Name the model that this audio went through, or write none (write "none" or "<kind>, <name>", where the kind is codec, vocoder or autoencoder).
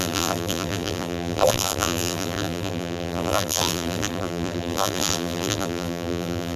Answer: vocoder, BigVGAN v2